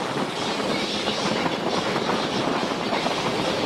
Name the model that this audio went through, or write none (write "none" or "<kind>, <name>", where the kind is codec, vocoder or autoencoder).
none